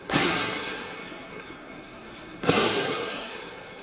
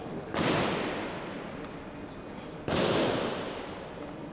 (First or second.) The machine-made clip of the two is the first